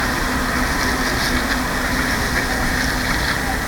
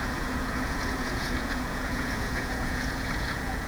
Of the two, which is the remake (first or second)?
second